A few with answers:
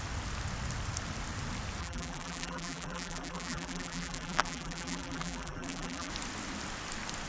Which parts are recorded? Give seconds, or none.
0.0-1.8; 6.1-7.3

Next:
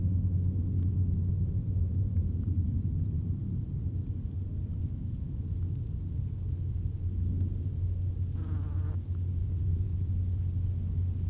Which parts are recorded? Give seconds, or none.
0.0-1.6; 4.5-9.4; 10.1-11.3

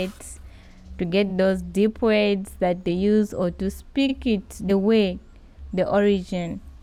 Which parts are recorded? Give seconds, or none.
0.0-4.1; 4.7-6.8

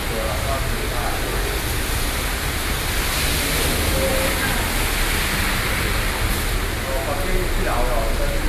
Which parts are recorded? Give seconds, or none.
0.0-8.5

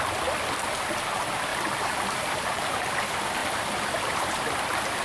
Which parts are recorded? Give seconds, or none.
0.0-1.5; 2.9-5.0

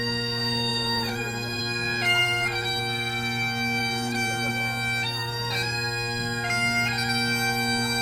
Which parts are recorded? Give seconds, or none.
0.0-0.7; 1.6-2.2; 2.8-3.8; 4.5-8.0